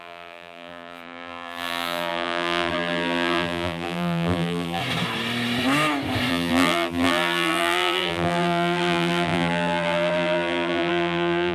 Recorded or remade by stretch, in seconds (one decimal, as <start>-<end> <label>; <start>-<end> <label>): 0.0-4.8 remade; 4.8-6.3 recorded; 6.3-11.5 remade